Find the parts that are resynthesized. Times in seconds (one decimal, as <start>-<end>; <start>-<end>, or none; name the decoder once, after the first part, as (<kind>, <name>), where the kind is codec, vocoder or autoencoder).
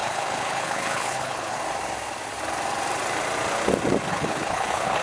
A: 0.0-1.6 (codec, HILCodec); 4.1-5.0